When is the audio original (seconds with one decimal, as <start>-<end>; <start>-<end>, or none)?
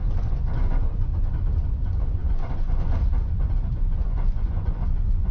1.1-1.7